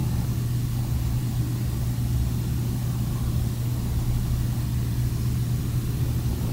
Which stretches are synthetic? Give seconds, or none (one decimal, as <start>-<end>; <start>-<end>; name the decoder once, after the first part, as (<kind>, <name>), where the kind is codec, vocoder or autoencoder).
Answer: none